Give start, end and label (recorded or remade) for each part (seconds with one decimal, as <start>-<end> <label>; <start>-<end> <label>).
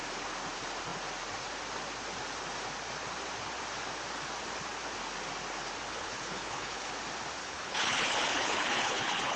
0.0-5.9 recorded; 5.9-6.9 remade; 6.9-7.4 recorded; 7.4-9.4 remade